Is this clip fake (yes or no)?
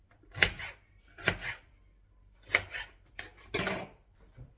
yes